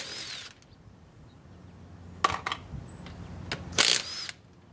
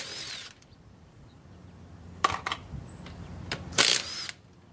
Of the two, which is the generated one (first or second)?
second